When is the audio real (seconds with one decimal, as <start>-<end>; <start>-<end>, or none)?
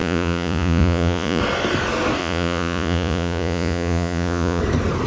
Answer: 1.4-2.2; 4.6-5.1